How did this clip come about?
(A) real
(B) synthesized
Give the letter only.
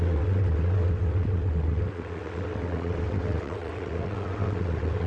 B